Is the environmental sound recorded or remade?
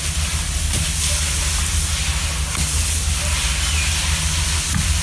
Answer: recorded